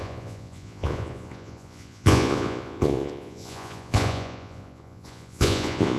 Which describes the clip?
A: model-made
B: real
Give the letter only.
A